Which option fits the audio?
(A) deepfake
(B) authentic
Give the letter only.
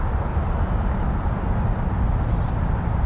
B